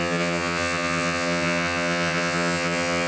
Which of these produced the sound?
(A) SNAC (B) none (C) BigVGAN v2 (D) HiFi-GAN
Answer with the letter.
D